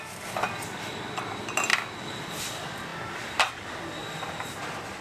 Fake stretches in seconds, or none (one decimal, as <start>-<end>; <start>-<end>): 2.9-3.5; 4.0-5.0